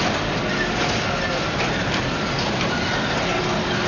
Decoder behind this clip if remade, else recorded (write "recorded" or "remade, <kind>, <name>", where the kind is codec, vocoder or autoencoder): recorded